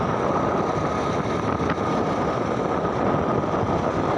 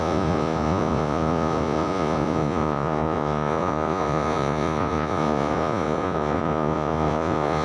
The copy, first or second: second